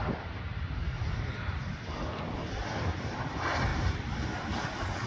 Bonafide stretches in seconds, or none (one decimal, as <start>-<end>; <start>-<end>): 0.0-5.1